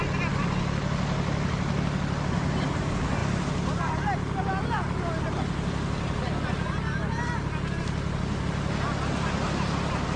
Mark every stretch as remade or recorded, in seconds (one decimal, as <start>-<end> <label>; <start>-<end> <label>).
0.0-10.2 recorded